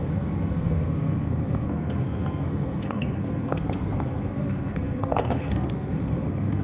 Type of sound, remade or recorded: remade